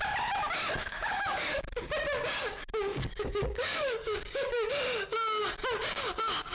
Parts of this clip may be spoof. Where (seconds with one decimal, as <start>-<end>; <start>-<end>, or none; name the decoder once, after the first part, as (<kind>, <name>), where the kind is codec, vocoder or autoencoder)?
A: 0.8-1.6 (codec, DAC); 2.9-4.7